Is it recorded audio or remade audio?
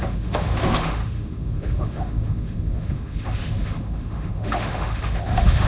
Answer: remade